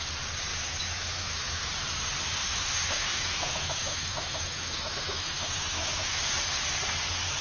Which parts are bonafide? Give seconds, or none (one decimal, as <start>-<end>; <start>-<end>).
0.0-0.5; 1.7-2.4; 6.2-7.4